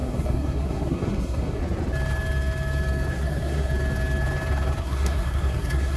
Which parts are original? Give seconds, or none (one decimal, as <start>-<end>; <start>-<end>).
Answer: 1.6-3.1; 3.7-4.8